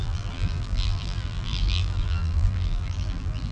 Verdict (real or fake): fake